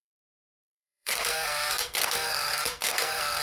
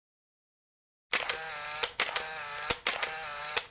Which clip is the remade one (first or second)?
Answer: first